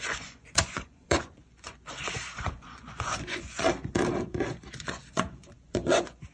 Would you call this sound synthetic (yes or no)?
yes